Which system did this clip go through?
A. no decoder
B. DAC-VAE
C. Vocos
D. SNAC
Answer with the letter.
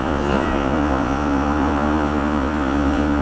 C